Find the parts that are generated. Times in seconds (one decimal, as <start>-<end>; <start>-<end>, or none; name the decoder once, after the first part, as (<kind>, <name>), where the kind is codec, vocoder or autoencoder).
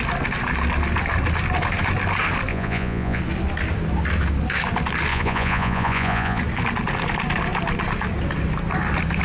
2.5-3.2 (vocoder, Vocos); 5.1-6.4